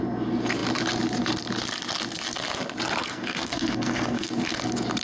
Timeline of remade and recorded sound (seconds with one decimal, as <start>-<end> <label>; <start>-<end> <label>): 0.0-3.0 recorded; 3.0-4.3 remade; 4.3-5.0 recorded